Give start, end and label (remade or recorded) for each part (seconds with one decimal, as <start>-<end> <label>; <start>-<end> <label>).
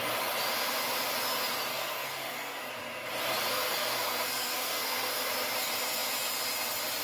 0.0-1.7 recorded; 1.7-2.7 remade; 2.7-3.5 recorded; 3.5-5.3 remade; 5.3-7.0 recorded